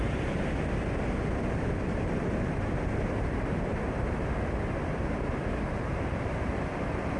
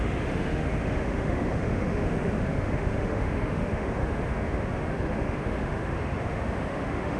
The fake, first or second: second